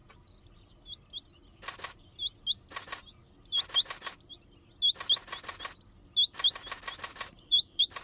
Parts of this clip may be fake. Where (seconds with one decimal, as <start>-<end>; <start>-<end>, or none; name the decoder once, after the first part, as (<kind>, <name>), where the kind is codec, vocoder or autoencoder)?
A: 7.1-8.0 (vocoder, BigVGAN v2)